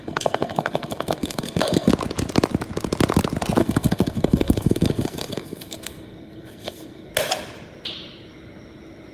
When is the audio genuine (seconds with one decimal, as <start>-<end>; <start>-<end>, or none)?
1.9-3.6; 7.1-9.1